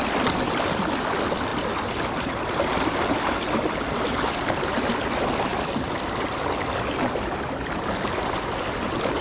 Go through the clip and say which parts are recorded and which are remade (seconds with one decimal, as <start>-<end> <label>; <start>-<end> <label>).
0.0-9.2 recorded